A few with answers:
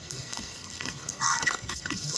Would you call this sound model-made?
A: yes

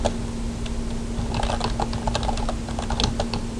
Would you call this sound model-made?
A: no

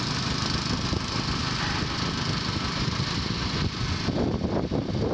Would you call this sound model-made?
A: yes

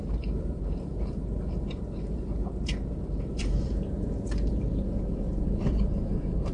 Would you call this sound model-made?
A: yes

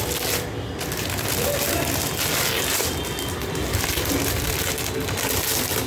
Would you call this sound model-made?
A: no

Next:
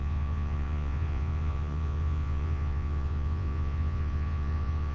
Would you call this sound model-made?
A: yes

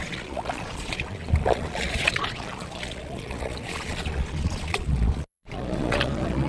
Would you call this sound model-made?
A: yes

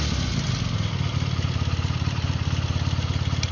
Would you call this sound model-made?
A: no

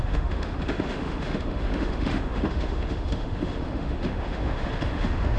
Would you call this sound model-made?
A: yes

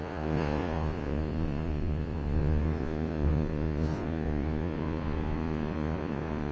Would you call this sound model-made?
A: yes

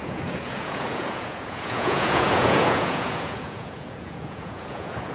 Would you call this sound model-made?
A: yes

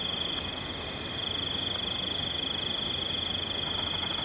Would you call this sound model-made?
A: no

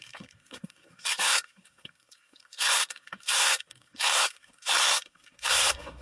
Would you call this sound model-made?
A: yes